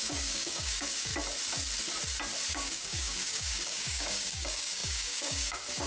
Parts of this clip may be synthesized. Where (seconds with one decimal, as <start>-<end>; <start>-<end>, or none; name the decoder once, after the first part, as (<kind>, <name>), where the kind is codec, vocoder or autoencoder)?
0.0-1.1 (codec, DAC); 2.5-5.9